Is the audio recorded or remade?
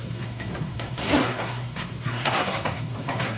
remade